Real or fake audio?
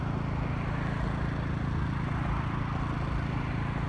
real